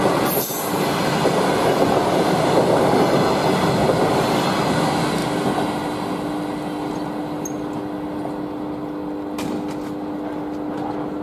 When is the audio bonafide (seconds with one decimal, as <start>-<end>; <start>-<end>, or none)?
0.0-11.2